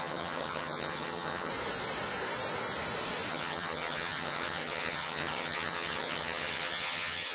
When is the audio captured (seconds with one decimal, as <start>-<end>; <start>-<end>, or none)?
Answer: 1.5-3.3